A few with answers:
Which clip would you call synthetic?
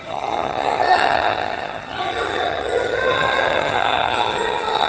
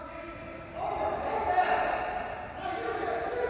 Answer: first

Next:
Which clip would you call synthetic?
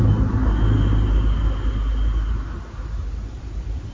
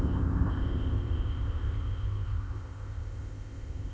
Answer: second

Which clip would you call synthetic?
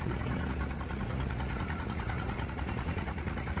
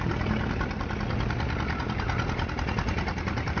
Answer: first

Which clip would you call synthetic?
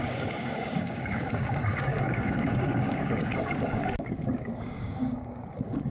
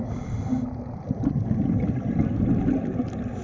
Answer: first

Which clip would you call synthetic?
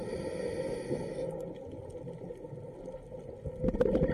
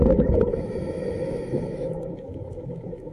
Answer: second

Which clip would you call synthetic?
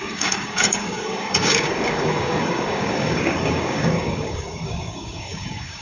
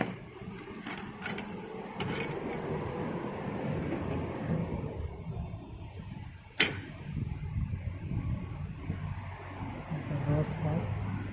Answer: first